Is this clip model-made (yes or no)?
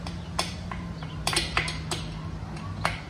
no